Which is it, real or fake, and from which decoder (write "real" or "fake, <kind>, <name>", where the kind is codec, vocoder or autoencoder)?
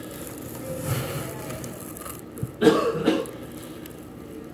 real